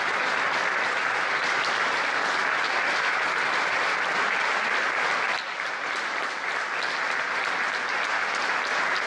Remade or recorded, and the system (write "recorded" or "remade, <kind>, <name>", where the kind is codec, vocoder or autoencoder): recorded